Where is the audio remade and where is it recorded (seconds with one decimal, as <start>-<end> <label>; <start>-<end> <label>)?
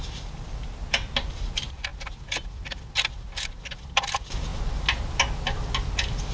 0.0-6.3 recorded